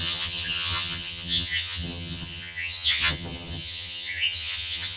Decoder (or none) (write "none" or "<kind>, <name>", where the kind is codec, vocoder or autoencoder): vocoder, HiFi-GAN